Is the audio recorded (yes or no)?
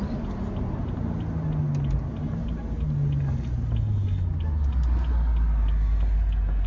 yes